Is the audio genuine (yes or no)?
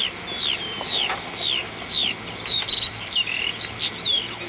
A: yes